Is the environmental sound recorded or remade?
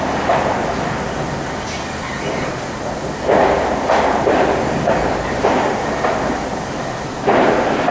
recorded